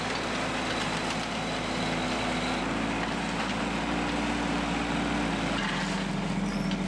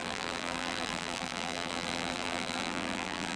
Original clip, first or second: first